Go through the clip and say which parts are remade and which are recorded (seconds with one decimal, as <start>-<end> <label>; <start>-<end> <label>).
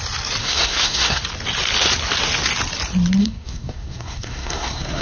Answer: 0.0-0.4 recorded; 0.4-1.2 remade; 1.2-3.2 recorded; 3.2-5.0 remade